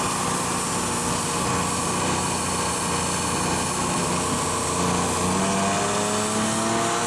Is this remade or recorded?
recorded